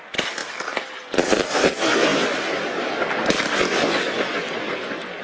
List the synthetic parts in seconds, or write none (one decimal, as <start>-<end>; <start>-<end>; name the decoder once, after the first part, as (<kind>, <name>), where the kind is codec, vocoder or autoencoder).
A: 0.0-5.2 (vocoder, BigVGAN v2)